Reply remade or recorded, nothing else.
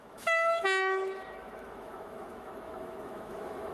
remade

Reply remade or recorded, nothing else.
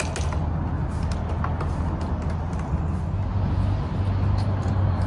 recorded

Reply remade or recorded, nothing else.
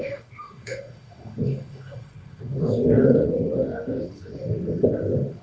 remade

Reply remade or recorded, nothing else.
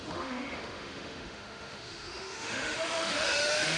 remade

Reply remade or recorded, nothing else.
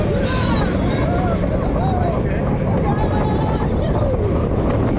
recorded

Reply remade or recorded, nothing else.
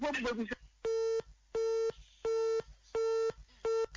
recorded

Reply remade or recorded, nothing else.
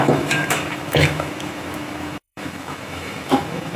remade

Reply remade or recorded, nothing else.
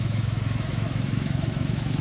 remade